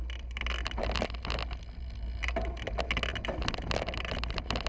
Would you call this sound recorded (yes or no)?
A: yes